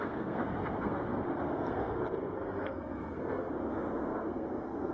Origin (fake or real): fake